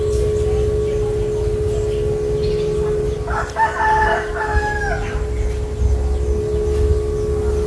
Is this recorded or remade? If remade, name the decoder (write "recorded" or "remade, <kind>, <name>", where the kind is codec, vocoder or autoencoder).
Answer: recorded